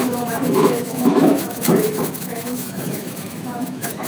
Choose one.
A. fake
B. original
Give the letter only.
A